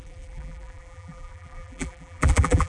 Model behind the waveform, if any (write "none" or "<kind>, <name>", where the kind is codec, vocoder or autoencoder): vocoder, BigVGAN v2